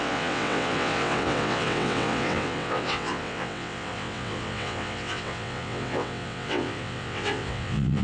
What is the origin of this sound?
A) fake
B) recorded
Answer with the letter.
A